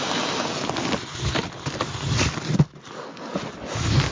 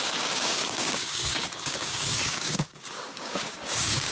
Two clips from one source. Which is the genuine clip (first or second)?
first